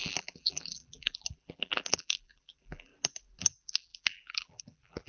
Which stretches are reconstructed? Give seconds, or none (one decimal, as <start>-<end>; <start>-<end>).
0.0-2.9; 3.4-5.1